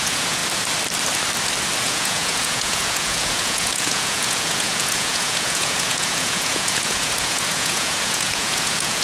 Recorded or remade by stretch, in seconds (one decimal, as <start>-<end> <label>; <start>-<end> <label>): 0.0-0.4 remade; 0.4-1.8 recorded; 1.8-9.0 remade